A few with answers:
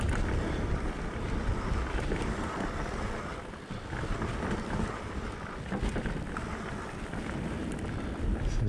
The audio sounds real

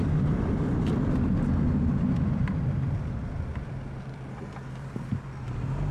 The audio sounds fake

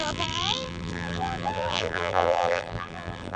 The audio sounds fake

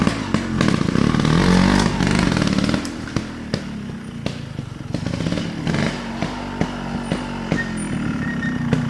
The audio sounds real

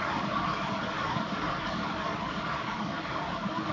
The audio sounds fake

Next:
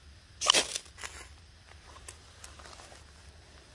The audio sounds real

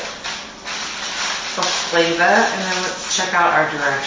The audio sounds real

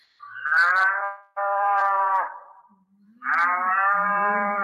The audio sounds fake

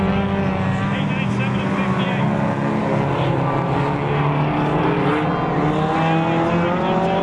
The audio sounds real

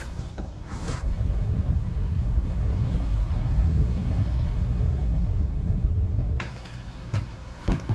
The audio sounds fake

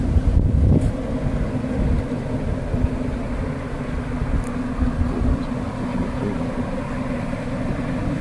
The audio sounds real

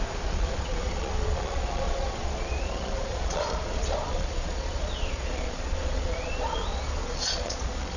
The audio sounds fake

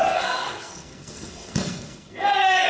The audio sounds fake